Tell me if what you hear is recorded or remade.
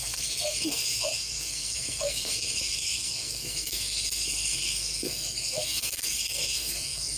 remade